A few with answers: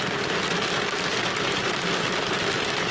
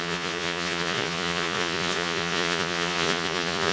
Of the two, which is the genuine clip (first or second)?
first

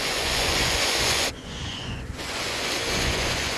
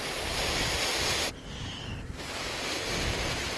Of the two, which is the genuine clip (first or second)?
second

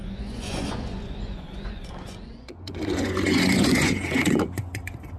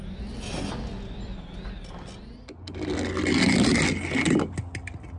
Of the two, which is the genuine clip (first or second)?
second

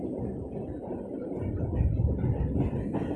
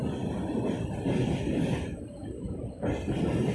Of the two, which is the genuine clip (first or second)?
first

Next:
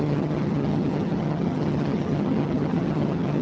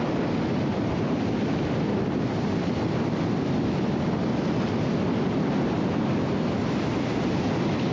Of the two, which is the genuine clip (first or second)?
second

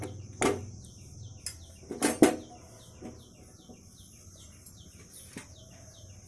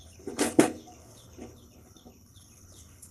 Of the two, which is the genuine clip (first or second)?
first